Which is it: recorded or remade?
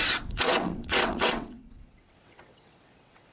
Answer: remade